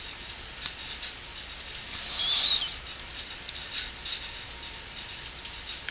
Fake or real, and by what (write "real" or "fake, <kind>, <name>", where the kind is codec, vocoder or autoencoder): real